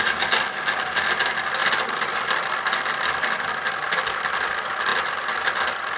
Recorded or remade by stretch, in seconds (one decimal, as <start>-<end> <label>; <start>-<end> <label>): 0.0-6.0 recorded